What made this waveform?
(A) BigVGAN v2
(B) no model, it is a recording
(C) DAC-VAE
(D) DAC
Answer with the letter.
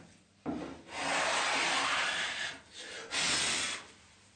B